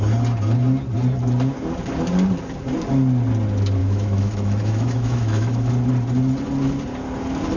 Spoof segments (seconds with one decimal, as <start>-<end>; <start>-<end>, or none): 3.8-5.7

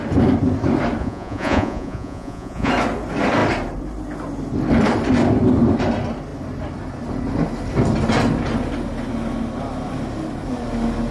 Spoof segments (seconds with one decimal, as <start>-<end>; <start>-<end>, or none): 1.0-2.7

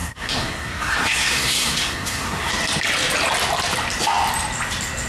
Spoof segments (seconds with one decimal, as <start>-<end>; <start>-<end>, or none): 0.0-2.5

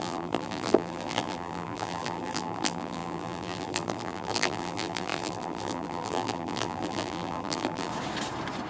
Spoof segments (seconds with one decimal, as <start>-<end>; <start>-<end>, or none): 0.0-7.9

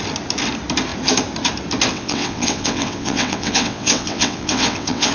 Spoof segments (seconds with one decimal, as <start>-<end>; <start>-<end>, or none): 1.9-5.1

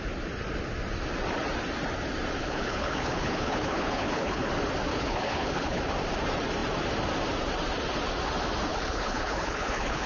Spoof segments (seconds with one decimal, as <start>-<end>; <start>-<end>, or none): 2.4-4.5; 4.9-5.8; 8.7-10.1

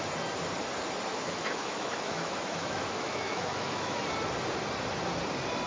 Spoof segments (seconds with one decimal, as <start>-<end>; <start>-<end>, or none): 1.1-4.0